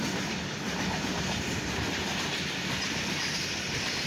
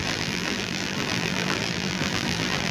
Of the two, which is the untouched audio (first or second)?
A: first